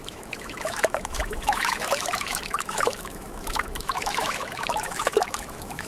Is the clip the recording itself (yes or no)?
no